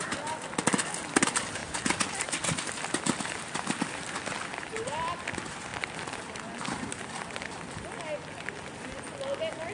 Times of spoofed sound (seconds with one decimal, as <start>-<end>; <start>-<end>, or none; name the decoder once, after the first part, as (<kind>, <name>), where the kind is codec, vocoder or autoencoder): none